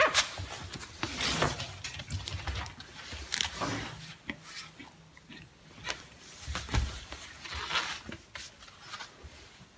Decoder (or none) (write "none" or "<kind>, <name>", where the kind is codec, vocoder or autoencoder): none